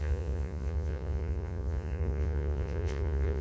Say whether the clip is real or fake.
fake